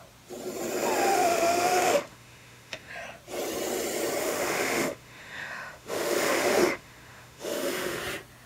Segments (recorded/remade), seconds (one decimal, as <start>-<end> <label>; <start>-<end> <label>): 0.0-1.1 recorded; 1.1-2.9 remade; 2.9-4.2 recorded; 4.2-8.0 remade; 8.0-8.5 recorded